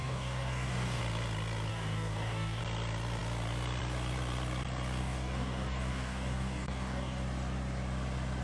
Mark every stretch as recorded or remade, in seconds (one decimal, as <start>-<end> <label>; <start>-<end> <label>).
0.0-1.0 remade; 1.0-1.7 recorded; 1.7-2.6 remade; 2.6-5.0 recorded; 5.0-7.2 remade; 7.2-8.4 recorded